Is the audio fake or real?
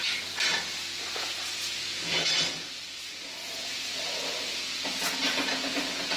fake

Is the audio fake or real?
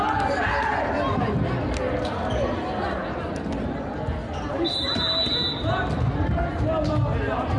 real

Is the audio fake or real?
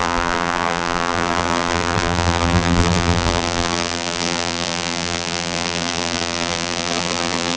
fake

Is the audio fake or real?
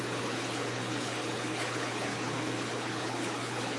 fake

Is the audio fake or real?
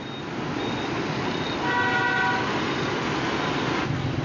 real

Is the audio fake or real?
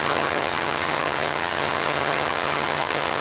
fake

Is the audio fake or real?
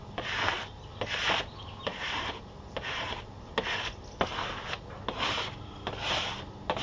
real